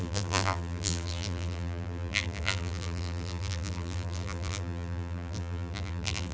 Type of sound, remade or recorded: remade